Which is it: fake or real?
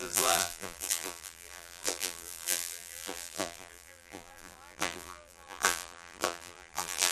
fake